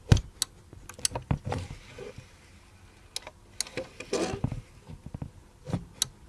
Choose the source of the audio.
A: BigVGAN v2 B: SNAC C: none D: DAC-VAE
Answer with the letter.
C